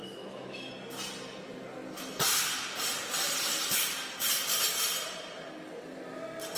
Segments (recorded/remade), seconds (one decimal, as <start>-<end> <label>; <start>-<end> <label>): 0.0-0.7 remade; 0.7-6.6 recorded

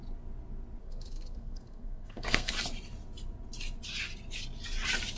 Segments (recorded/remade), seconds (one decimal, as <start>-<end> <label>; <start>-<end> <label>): 0.0-0.8 recorded; 0.8-2.5 remade; 2.5-5.2 recorded

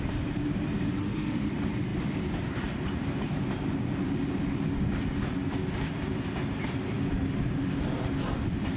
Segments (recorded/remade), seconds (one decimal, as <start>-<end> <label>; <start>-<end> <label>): 0.0-1.0 recorded; 1.0-1.5 remade; 1.5-8.8 recorded